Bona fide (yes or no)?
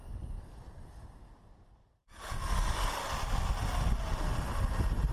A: yes